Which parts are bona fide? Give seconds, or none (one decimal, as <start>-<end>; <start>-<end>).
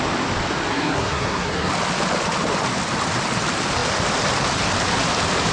0.0-0.7; 1.7-5.5